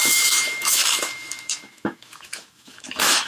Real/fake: fake